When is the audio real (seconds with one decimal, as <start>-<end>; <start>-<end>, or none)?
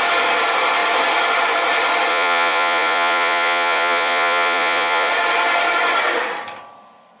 0.0-2.1; 5.1-7.2